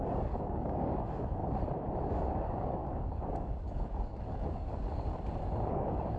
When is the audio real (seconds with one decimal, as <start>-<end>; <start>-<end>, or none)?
1.4-2.1; 5.1-5.7